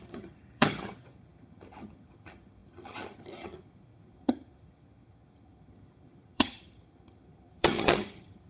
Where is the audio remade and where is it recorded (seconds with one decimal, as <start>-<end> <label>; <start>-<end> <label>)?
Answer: 0.0-8.5 remade

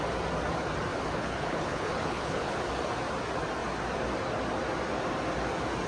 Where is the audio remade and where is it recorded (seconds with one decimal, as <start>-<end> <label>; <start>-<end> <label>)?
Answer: 0.0-0.9 recorded; 0.9-2.6 remade; 2.6-5.9 recorded

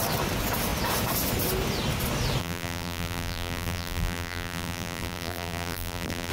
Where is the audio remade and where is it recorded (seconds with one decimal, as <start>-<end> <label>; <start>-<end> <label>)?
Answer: 0.0-2.4 recorded; 2.4-6.3 remade

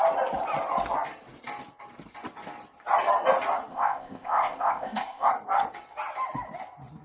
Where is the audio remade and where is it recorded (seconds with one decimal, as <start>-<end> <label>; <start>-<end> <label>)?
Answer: 0.0-3.7 recorded; 3.7-5.3 remade; 5.3-7.0 recorded

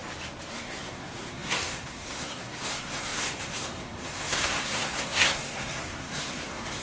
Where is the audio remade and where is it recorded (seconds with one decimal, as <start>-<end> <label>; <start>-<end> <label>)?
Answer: 0.0-0.5 recorded; 0.5-6.8 remade

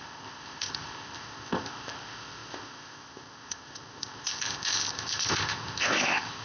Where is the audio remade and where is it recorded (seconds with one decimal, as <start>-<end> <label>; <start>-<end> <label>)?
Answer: 0.0-6.4 remade

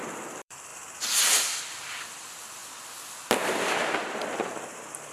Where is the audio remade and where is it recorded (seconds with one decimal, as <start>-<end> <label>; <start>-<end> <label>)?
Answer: 0.0-0.7 remade; 0.7-1.2 recorded; 1.2-2.6 remade; 2.6-4.0 recorded; 4.0-5.1 remade